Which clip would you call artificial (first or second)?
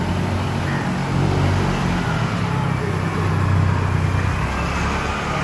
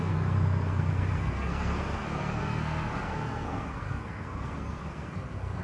second